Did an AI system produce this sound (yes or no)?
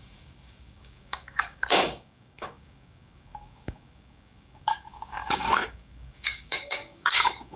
yes